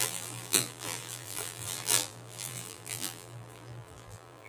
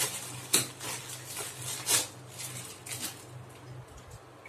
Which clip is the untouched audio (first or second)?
second